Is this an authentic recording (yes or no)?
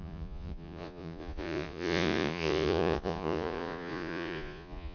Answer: no